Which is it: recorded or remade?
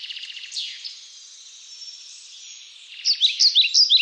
recorded